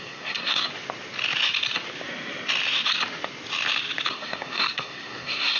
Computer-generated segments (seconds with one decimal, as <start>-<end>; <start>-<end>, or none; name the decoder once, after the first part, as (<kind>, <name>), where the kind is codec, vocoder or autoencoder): 0.0-0.7 (codec, SNAC); 4.1-5.6

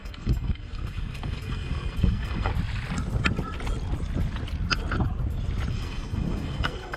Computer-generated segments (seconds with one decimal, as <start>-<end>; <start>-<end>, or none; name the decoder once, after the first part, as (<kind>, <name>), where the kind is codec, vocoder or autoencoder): 0.0-2.5 (codec, SNAC); 5.7-7.0

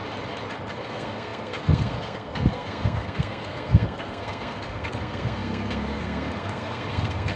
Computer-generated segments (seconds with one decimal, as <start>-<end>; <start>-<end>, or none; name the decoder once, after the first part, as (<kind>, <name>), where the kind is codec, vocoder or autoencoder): 0.7-7.4 (codec, SNAC)

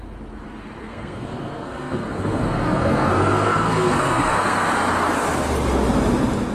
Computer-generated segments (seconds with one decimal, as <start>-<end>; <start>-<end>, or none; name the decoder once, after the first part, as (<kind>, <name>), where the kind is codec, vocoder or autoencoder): 0.8-4.7 (codec, SNAC)

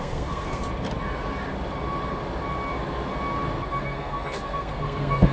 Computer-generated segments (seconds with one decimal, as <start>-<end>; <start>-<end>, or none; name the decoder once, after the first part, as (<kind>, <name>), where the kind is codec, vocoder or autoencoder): 0.0-0.6 (codec, SNAC); 3.8-5.3

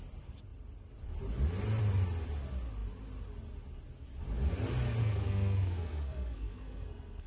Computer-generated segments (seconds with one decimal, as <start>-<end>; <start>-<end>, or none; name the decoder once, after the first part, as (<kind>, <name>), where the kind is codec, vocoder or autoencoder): 5.0-7.3 (codec, SNAC)

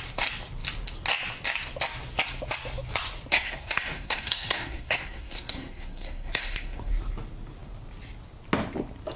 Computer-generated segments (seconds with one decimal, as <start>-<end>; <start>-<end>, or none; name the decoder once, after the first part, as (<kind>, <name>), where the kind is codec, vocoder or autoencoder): 3.3-6.9 (codec, SNAC)

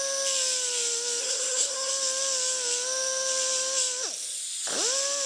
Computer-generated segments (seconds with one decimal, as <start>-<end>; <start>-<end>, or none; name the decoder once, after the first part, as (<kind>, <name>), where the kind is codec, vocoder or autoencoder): 1.2-1.9 (codec, SNAC)